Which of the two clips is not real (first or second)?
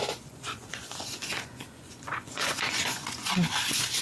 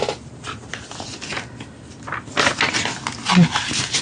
first